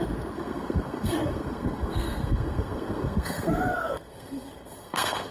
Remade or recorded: remade